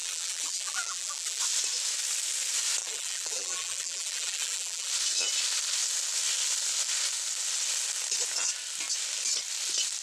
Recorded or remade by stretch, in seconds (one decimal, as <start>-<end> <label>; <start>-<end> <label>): 0.0-1.4 remade; 1.4-2.8 recorded; 2.8-4.9 remade; 4.9-10.0 recorded